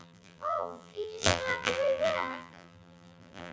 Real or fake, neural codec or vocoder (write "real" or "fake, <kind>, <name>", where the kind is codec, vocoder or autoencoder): fake, vocoder, BigVGAN v2